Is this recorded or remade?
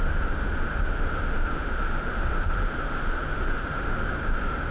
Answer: remade